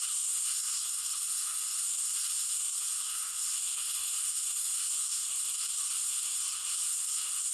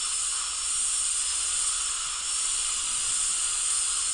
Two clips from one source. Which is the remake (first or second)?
first